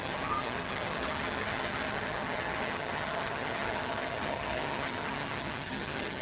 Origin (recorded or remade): remade